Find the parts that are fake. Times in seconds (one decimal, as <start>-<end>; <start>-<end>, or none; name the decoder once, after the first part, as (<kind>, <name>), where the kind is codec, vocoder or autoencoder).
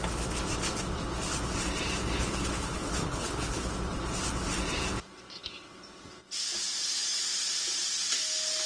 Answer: 2.0-3.7 (codec, HILCodec)